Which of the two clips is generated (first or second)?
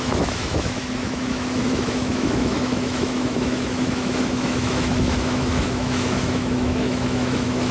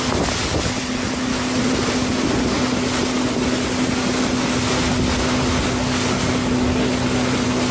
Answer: first